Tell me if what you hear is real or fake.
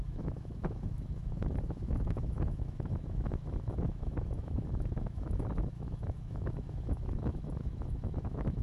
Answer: fake